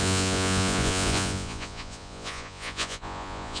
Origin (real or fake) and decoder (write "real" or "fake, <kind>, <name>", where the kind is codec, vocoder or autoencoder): fake, vocoder, Vocos